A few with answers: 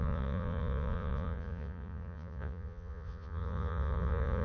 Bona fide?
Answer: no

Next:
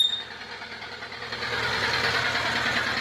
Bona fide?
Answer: yes